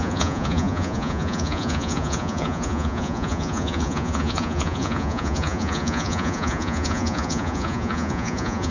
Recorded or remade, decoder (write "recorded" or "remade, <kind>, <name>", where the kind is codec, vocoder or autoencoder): remade, vocoder, Vocos